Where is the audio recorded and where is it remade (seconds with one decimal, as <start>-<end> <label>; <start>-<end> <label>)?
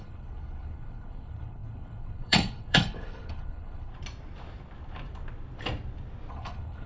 0.0-3.9 remade; 3.9-6.3 recorded; 6.3-6.9 remade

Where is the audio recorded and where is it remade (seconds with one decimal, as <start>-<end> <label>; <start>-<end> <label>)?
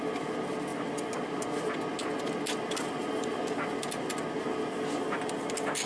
0.0-5.9 recorded